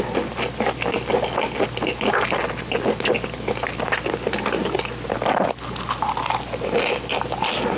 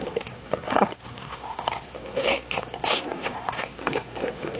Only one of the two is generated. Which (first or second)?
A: second